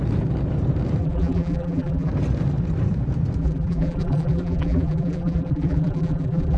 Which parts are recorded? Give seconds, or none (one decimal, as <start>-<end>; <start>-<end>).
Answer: 0.0-1.0; 2.1-3.4